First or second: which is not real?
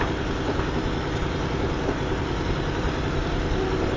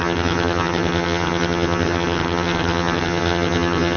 second